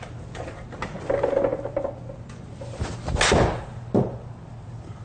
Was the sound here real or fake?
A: real